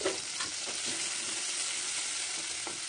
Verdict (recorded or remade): recorded